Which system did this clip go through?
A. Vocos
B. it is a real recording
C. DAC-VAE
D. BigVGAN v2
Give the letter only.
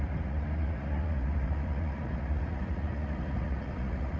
A